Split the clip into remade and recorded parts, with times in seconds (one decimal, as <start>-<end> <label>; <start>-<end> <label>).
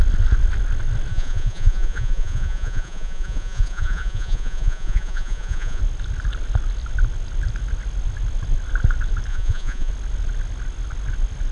0.0-1.1 recorded; 1.1-5.8 remade; 5.8-9.3 recorded; 9.3-9.9 remade; 9.9-11.5 recorded